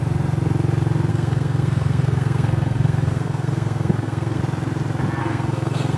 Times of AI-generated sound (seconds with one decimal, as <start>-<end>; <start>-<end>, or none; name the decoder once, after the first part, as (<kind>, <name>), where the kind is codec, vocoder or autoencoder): 1.1-4.4 (codec, SNAC); 5.2-6.0